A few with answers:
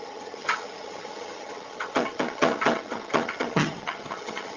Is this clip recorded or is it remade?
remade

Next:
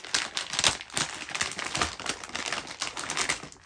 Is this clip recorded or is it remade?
recorded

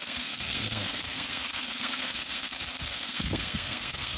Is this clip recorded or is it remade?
remade